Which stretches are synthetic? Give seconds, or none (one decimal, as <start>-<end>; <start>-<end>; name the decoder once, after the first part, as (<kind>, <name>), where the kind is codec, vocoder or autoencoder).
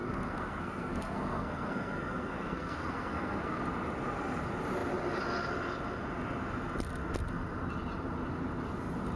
0.0-3.6 (codec, SNAC)